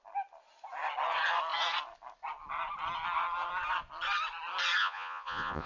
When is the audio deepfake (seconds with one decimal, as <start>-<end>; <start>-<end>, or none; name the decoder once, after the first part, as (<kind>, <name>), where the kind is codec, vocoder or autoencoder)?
4.8-5.7 (vocoder, Vocos)